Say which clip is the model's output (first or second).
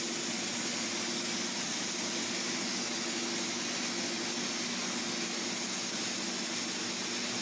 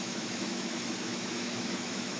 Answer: second